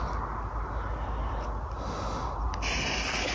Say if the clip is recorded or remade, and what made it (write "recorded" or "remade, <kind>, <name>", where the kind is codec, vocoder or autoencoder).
recorded